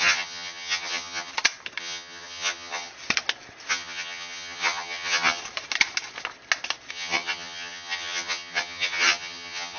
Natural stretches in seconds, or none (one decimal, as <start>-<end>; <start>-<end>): 1.3-1.8; 2.9-3.7; 5.4-6.9